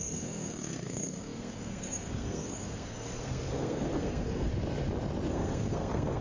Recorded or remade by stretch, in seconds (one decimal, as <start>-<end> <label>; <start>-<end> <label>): 0.0-4.5 remade; 4.5-5.3 recorded; 5.3-6.2 remade